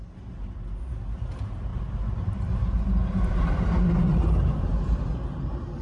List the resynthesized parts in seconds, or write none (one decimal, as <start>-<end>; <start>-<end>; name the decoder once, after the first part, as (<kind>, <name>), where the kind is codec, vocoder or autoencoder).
1.7-5.2 (vocoder, BigVGAN v2)